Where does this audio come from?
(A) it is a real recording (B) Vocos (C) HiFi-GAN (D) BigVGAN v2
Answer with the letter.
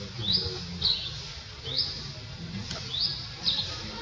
A